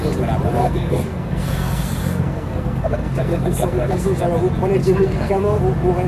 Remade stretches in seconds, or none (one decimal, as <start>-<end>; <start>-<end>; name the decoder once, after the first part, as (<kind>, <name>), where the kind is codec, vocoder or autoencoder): 0.5-4.2 (codec, SNAC); 4.8-5.6